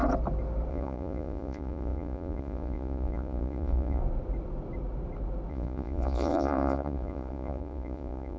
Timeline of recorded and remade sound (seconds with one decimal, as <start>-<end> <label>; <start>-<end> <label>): 0.0-0.7 recorded; 0.7-4.0 remade; 4.0-5.5 recorded; 5.5-8.4 remade